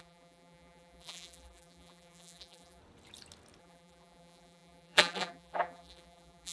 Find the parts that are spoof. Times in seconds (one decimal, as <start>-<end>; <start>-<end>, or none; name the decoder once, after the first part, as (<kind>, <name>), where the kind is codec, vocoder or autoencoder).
0.0-2.8 (vocoder, BigVGAN v2); 3.6-6.5